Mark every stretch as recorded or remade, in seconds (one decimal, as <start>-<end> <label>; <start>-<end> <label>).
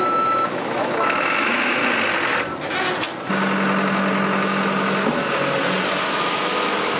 0.0-1.8 remade; 1.8-6.0 recorded; 6.0-7.0 remade